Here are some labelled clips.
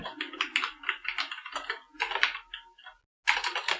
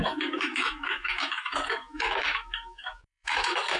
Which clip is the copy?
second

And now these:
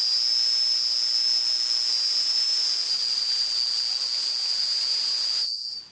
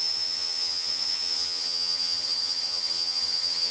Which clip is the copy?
second